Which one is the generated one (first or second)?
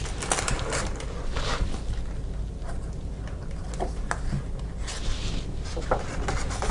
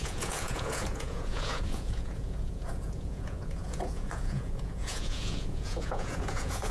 second